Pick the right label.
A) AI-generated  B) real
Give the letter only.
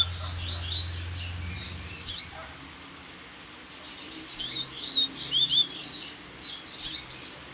B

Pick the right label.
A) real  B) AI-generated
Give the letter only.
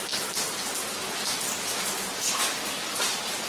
A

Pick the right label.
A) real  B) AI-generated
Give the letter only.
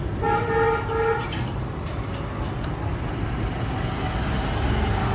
A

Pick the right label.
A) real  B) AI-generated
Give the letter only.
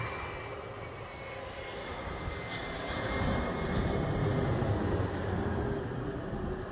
A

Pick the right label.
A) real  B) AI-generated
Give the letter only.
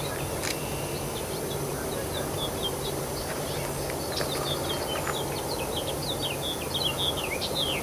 A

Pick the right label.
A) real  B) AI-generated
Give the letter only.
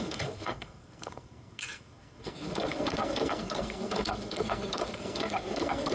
B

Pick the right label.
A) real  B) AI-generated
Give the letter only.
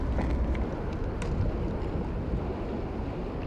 A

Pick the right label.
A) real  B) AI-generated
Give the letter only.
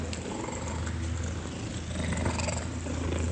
A